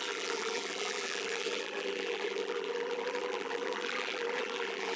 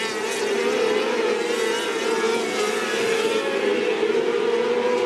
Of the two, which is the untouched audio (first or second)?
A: second